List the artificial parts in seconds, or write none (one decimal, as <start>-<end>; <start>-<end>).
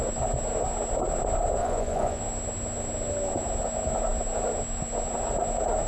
1.6-2.2